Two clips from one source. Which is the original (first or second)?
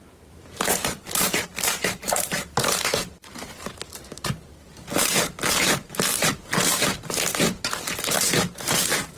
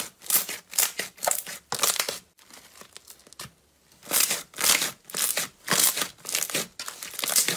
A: second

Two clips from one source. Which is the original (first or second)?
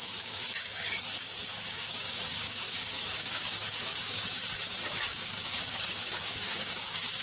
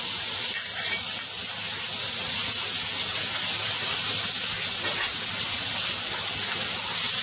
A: second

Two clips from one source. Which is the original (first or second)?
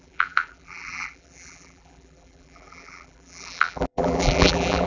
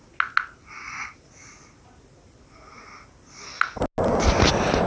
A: second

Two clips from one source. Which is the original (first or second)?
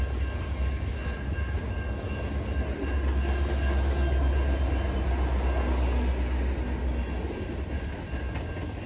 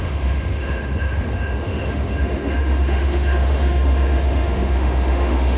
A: first